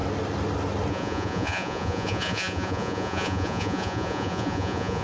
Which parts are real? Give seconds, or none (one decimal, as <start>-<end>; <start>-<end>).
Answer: 0.0-0.9